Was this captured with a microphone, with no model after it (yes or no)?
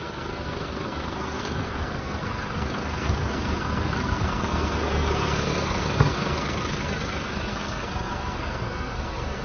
no